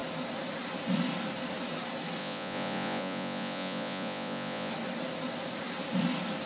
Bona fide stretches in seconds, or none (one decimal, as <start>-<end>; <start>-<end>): 0.0-2.2; 4.7-6.5